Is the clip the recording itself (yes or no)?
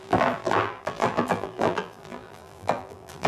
no